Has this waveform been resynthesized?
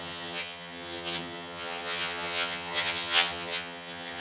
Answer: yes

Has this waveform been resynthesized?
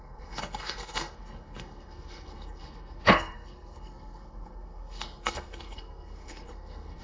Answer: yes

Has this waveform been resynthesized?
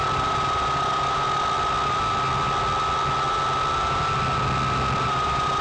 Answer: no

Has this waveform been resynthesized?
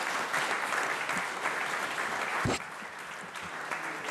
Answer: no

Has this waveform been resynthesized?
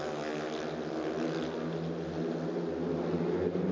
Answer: no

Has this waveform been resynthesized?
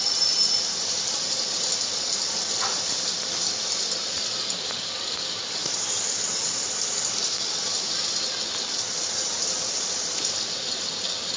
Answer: no